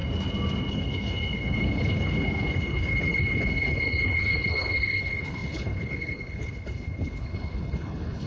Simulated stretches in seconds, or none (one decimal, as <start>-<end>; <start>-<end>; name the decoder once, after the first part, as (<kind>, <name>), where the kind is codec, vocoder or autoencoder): 0.7-8.3 (codec, HILCodec)